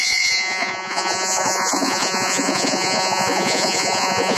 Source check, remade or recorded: remade